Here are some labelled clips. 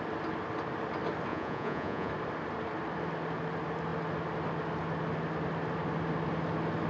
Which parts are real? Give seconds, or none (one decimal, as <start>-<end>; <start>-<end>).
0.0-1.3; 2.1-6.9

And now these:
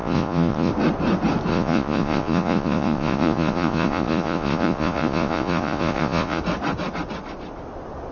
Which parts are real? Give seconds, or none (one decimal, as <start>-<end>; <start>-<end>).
0.7-1.5; 6.4-8.1

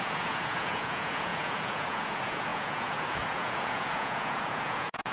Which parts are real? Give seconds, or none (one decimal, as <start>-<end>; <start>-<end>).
none